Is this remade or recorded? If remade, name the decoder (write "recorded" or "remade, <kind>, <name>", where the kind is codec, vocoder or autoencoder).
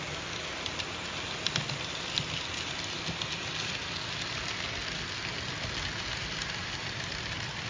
recorded